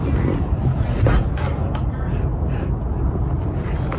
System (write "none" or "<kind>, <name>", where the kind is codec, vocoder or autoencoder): none